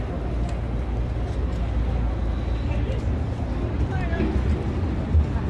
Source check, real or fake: real